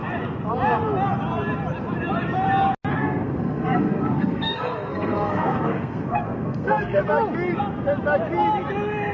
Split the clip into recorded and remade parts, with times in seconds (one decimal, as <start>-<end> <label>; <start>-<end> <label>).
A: 0.0-2.9 recorded; 2.9-7.0 remade; 7.0-9.1 recorded